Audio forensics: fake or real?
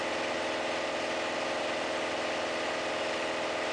real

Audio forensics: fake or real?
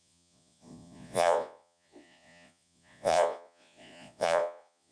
fake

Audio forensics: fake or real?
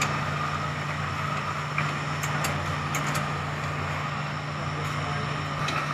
real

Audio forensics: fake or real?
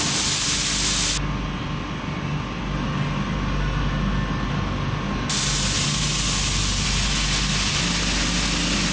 real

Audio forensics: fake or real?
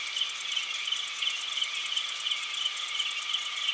real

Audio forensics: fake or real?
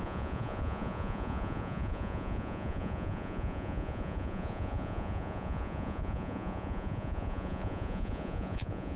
fake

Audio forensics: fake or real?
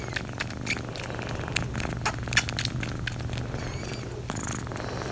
real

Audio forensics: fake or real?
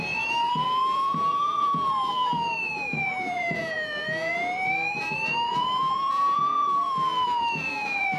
fake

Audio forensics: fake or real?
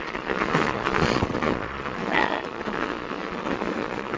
fake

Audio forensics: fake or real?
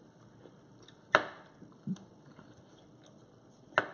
real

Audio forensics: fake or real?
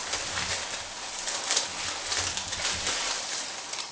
real